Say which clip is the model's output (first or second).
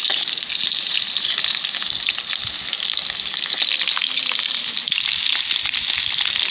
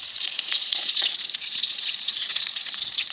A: second